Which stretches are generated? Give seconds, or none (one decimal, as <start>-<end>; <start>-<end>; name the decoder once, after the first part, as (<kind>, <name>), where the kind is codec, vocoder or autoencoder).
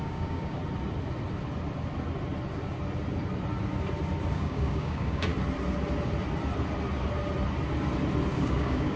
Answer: 0.0-0.6 (codec, DAC); 4.3-5.3; 8.3-9.0